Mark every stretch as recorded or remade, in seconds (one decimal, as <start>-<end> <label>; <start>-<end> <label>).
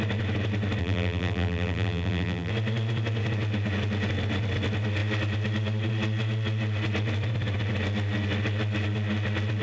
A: 0.0-0.8 recorded; 0.8-2.5 remade; 2.5-9.6 recorded